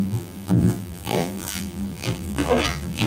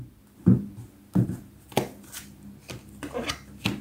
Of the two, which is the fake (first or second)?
first